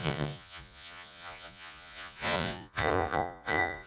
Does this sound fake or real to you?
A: fake